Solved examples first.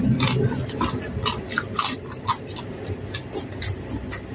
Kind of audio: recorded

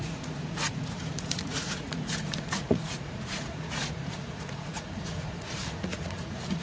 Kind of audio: remade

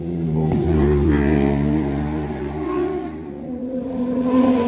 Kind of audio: remade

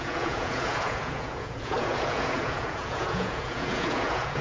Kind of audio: remade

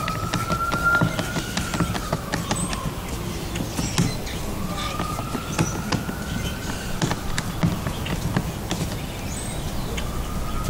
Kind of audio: recorded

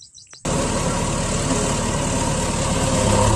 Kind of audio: recorded